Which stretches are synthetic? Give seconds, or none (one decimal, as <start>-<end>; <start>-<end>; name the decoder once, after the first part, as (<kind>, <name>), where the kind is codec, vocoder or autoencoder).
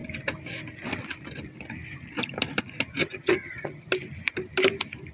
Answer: 3.0-3.9 (vocoder, HiFi-GAN)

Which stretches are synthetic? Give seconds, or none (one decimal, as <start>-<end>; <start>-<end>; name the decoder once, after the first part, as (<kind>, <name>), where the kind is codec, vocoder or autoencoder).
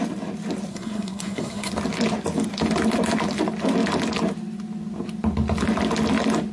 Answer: 0.7-1.7 (codec, SNAC)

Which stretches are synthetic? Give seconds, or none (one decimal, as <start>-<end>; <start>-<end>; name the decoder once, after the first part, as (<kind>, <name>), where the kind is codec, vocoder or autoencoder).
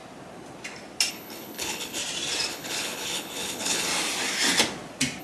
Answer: 1.1-2.0 (codec, HILCodec); 2.5-3.9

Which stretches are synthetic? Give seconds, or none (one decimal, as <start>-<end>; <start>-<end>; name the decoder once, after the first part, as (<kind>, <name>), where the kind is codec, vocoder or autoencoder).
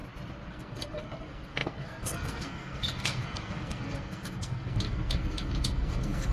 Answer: 0.5-6.3 (codec, SNAC)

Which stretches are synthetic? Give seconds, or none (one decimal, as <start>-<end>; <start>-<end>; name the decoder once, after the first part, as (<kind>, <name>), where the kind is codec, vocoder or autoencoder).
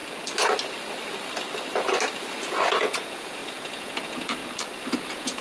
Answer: 2.8-4.4 (vocoder, Vocos); 4.9-5.4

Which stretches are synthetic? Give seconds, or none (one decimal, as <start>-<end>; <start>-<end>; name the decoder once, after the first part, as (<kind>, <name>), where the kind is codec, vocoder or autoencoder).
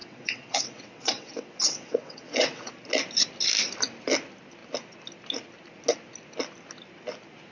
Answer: 0.0-2.7 (vocoder, WaveNeXt)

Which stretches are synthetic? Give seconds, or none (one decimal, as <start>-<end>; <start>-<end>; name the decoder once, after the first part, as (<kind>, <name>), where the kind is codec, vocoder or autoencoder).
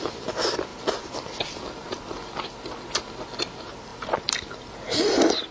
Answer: 0.0-0.7 (vocoder, BigVGAN v2); 3.4-5.5